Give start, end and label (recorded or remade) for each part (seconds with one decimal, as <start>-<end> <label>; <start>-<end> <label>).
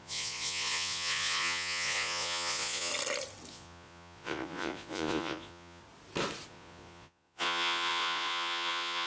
0.0-2.9 remade; 2.9-3.5 recorded; 3.5-5.8 remade; 5.8-6.5 recorded; 6.5-9.1 remade